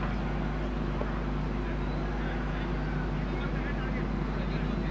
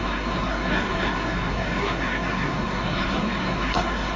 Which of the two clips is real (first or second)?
first